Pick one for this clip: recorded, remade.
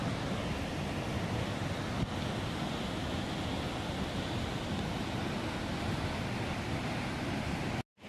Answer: recorded